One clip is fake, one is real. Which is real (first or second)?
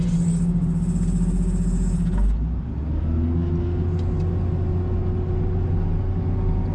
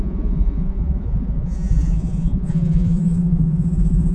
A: first